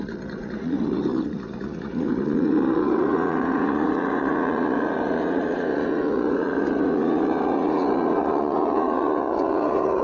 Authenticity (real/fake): fake